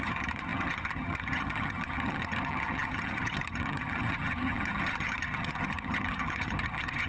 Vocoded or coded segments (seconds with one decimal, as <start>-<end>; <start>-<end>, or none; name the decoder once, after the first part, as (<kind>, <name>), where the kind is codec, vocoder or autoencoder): 0.0-7.1 (vocoder, HiFi-GAN)